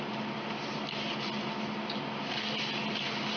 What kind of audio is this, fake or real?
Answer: real